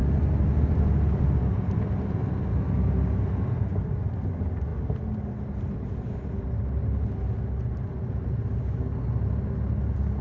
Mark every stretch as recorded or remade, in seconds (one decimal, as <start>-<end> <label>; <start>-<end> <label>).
0.0-10.2 recorded